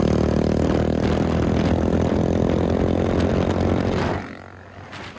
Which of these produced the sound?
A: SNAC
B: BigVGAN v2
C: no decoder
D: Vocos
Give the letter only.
C